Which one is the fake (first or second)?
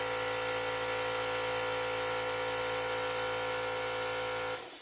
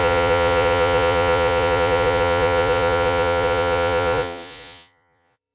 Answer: second